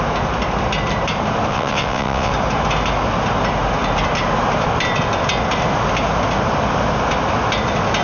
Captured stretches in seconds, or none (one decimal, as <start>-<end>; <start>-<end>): 0.0-1.5; 2.3-8.0